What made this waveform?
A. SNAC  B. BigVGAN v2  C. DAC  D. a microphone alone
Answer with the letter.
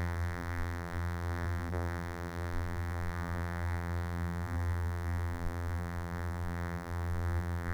B